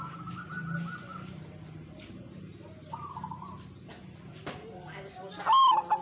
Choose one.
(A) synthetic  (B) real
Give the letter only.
B